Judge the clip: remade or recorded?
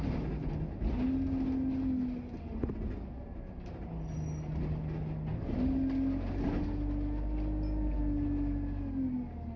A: recorded